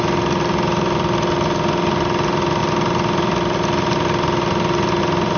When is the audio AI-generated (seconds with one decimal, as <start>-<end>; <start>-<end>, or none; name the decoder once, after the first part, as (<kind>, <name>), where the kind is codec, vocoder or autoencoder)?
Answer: none